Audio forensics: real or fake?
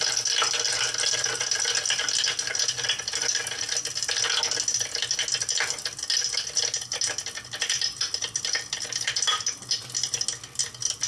real